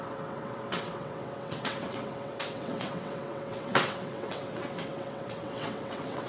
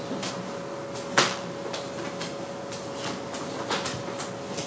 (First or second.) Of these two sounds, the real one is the second